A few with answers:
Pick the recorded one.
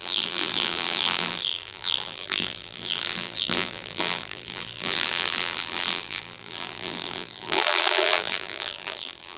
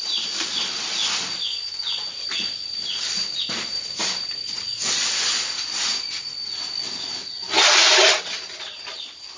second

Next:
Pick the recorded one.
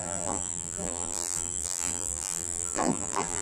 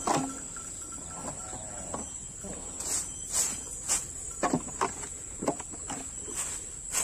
second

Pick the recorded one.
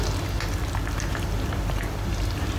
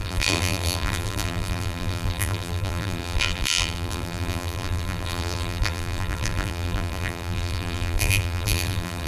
first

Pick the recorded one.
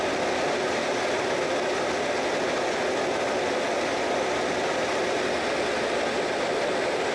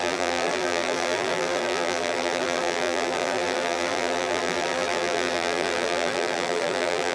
first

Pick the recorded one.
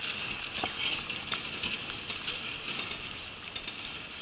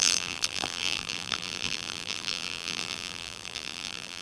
first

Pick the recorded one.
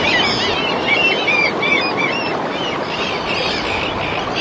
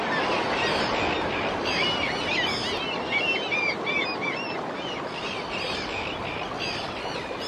second